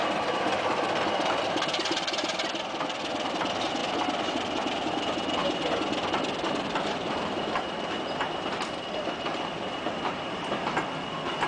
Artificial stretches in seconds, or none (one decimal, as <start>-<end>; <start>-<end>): none